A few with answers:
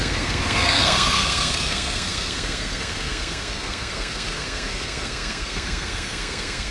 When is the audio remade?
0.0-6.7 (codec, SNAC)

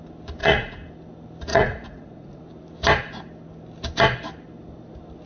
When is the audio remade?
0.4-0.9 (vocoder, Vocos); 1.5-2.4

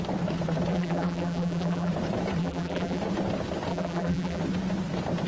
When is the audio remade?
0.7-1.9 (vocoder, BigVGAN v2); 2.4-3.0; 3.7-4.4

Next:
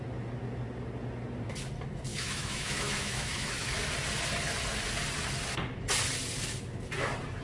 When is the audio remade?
2.1-3.7 (autoencoder, DAC-VAE)

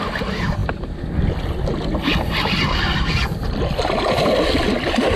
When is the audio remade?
none

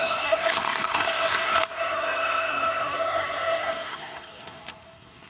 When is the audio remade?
0.0-5.3 (codec, SNAC)

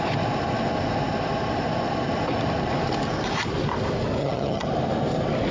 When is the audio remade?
4.2-4.7 (vocoder, HiFi-GAN)

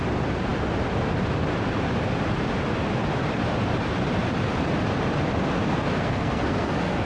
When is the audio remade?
5.7-7.1 (codec, SNAC)